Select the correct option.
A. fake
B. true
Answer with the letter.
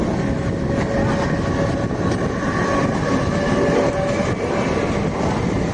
B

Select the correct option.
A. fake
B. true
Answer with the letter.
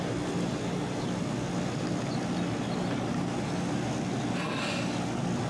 B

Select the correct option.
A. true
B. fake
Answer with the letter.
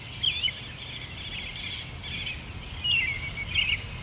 A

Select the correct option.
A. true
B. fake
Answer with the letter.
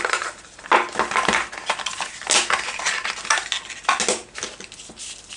A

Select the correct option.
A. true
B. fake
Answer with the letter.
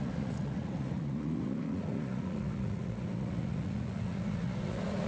B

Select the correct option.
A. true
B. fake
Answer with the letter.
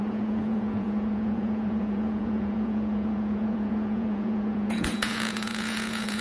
B